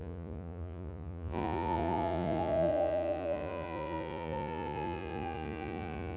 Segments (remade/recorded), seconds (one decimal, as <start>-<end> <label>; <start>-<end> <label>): 0.0-6.2 remade